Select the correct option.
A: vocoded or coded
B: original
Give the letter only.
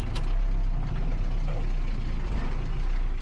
B